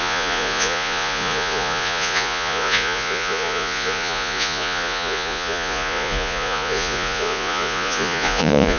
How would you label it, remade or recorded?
remade